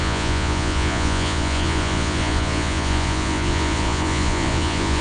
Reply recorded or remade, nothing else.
remade